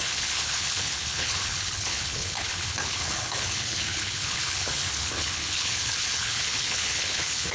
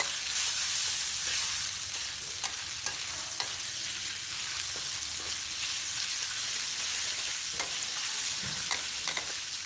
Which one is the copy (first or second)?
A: first